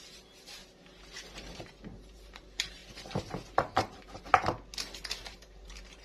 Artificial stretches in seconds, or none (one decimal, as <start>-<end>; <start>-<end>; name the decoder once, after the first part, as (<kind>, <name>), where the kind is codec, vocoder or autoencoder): 0.0-0.6 (vocoder, BigVGAN v2); 1.4-2.8; 3.6-4.3; 5.2-6.0